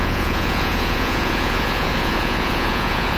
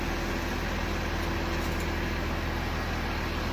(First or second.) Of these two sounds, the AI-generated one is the first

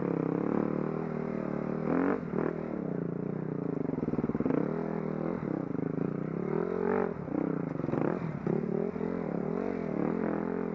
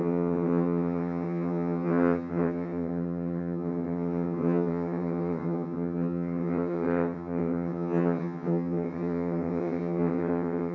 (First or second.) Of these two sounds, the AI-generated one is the second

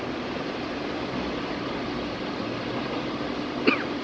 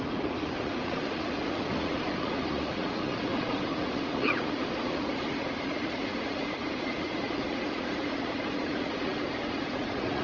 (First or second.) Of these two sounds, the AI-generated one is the second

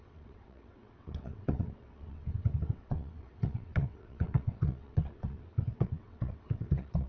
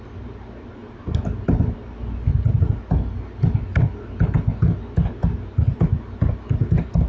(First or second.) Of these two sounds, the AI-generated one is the first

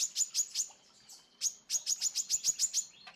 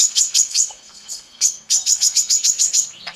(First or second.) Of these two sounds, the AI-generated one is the second